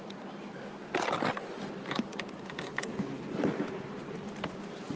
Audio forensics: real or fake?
real